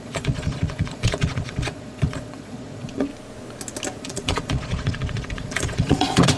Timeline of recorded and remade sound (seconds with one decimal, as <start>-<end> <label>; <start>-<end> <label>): 0.0-3.1 remade; 3.1-4.0 recorded; 4.0-6.4 remade